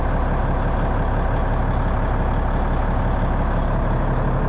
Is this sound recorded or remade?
recorded